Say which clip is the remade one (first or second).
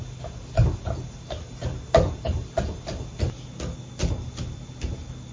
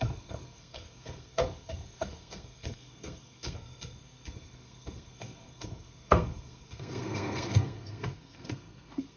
second